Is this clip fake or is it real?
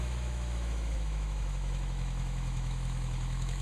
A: fake